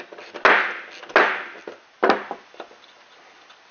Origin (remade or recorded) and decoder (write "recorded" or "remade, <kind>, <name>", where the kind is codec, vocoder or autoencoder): recorded